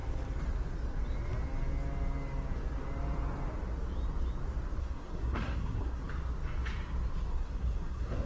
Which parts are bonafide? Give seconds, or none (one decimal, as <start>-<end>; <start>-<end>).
0.0-4.8; 6.0-7.3